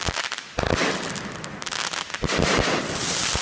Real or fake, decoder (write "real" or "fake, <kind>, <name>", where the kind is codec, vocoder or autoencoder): real